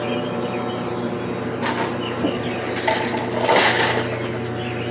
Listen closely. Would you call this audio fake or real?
real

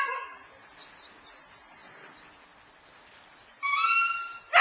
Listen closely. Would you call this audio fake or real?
real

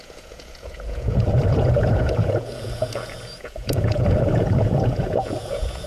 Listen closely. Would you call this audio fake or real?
fake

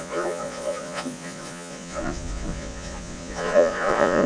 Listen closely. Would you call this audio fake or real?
fake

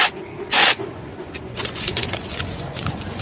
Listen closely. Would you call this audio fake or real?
fake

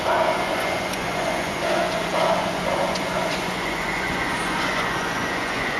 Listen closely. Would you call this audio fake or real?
fake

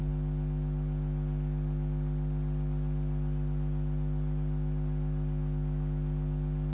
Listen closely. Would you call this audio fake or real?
real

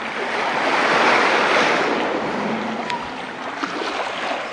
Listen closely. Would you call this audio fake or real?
real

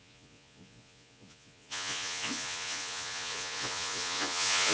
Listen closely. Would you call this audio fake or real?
fake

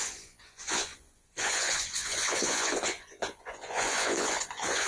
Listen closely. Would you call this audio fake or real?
fake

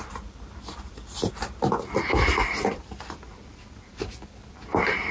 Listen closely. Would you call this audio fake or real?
real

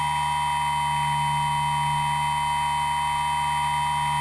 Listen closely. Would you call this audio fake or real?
real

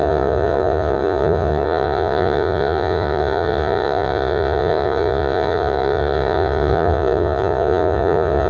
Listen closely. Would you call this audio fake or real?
fake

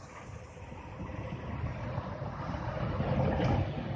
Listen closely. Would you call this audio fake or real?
real